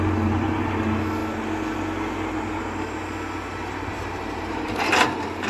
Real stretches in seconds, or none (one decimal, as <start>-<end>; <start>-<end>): 0.0-3.9